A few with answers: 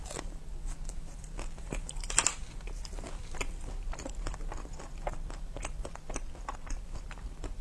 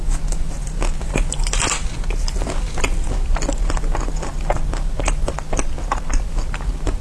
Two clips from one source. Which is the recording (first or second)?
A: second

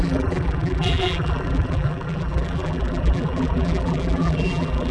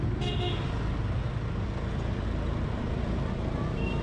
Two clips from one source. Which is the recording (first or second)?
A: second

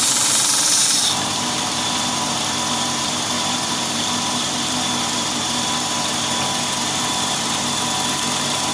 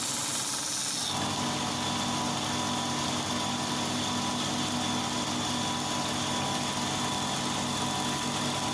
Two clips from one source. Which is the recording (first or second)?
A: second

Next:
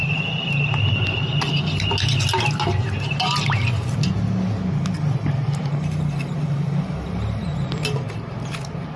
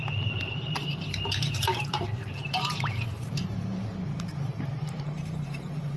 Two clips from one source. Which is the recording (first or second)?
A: first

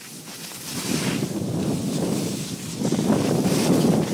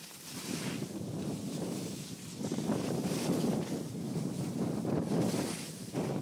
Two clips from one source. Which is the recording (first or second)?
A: first